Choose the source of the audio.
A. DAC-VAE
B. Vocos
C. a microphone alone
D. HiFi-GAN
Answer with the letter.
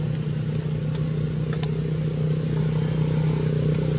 C